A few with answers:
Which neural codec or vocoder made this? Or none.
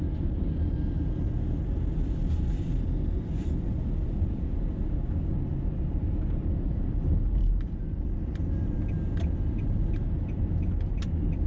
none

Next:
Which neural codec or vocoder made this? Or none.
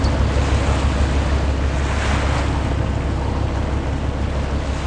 none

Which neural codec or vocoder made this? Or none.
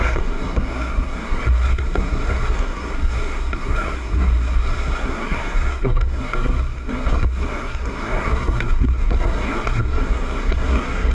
codec, SNAC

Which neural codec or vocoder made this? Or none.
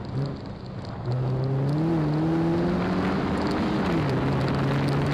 none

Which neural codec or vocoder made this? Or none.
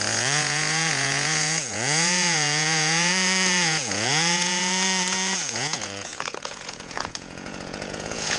vocoder, Vocos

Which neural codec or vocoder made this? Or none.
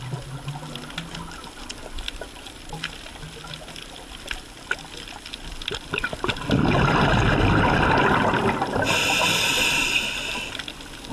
none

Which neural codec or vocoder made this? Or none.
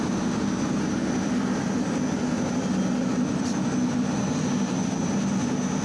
none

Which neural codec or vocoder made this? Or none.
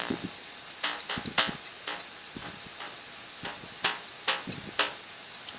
none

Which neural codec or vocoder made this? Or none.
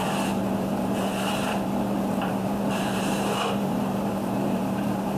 vocoder, BigVGAN v2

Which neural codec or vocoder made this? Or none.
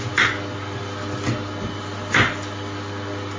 none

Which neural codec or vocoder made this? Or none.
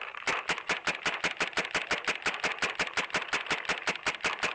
none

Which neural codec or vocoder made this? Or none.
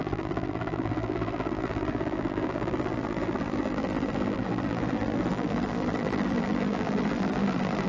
vocoder, BigVGAN v2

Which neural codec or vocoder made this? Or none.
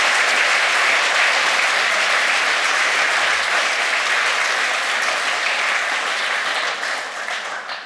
none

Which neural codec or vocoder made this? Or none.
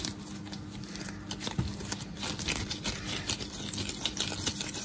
none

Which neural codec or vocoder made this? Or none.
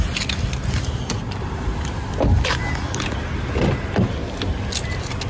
none